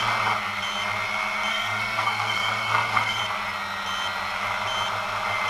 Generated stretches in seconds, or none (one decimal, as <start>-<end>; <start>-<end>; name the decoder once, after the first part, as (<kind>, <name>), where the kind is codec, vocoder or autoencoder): 1.5-3.2 (codec, SNAC)